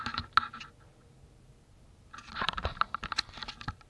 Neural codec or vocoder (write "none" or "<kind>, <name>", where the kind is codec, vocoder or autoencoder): none